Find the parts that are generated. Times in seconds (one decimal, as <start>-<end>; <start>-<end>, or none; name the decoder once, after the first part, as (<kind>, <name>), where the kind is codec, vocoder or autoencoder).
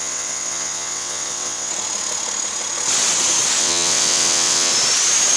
0.0-1.7 (vocoder, WaveNeXt); 3.6-4.7